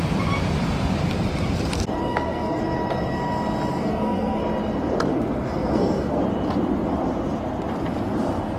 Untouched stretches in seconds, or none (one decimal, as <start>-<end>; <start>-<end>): 0.0-2.0; 2.6-3.7; 4.4-5.1; 6.2-8.6